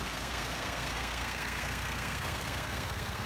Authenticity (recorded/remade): remade